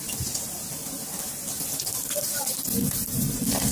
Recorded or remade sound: recorded